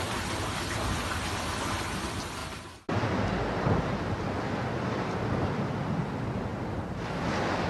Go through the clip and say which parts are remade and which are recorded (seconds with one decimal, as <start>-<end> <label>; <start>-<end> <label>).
0.0-7.7 recorded